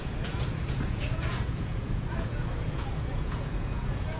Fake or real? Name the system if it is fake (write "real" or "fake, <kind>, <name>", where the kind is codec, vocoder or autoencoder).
fake, vocoder, Vocos